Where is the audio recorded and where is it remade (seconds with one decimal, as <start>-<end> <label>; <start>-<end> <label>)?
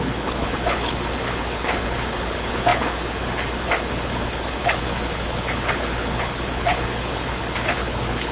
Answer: 0.0-8.3 remade